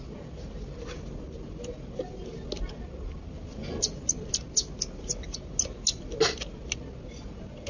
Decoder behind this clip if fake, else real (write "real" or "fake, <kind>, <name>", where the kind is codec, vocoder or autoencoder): real